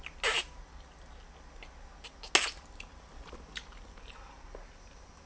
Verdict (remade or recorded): recorded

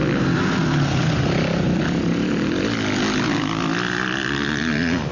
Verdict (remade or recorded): recorded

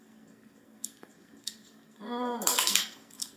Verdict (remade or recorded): remade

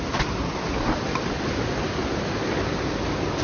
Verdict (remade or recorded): recorded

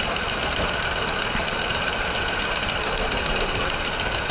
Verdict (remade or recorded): recorded